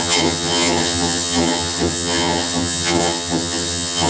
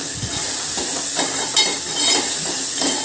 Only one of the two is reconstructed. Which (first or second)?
first